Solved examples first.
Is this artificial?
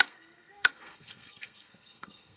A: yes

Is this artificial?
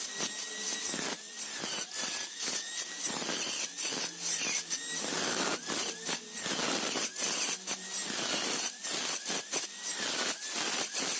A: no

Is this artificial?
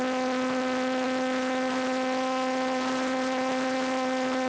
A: no